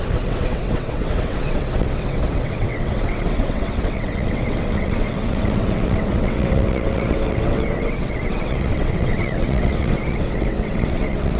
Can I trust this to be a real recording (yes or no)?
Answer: no